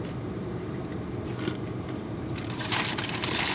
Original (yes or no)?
yes